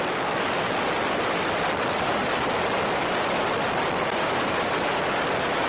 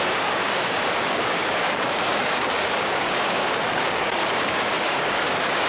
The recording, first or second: first